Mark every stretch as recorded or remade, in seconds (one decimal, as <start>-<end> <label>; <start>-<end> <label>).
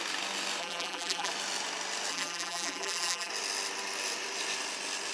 0.0-0.6 recorded; 0.6-1.3 remade; 1.3-2.1 recorded; 2.1-3.3 remade; 3.3-5.1 recorded